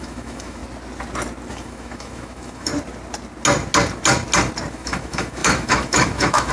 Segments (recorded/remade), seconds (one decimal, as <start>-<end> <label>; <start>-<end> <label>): 0.0-0.6 remade; 0.6-1.5 recorded; 1.5-2.7 remade; 2.7-4.7 recorded; 4.7-6.5 remade